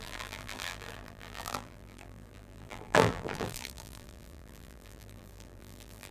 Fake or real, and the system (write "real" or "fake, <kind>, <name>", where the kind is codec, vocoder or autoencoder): fake, vocoder, BigVGAN v2